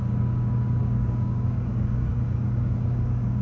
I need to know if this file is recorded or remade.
remade